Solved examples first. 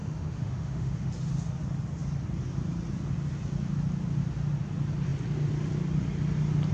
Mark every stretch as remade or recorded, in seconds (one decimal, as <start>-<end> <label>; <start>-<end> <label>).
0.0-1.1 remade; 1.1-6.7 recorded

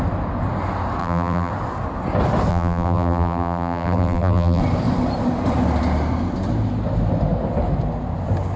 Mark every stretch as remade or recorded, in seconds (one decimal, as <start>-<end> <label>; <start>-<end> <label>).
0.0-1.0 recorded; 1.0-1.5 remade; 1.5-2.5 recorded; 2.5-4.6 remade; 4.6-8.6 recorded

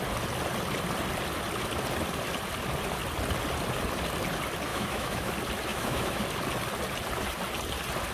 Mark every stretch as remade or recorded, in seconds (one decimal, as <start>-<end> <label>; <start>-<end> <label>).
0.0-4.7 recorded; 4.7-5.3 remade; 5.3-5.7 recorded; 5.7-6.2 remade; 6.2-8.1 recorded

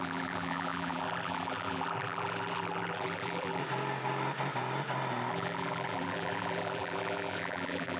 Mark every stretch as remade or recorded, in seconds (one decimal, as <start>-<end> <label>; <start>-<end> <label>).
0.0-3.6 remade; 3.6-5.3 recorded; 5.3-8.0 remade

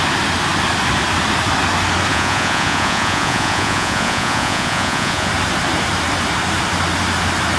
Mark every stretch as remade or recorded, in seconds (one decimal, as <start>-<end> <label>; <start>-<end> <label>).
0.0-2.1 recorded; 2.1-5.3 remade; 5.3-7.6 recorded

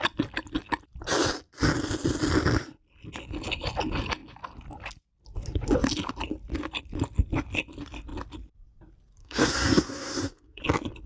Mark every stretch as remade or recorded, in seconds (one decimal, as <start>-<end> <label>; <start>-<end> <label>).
0.0-9.2 recorded; 9.2-10.6 remade; 10.6-11.1 recorded

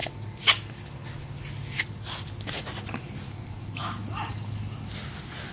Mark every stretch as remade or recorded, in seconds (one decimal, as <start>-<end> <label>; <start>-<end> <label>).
0.0-5.5 recorded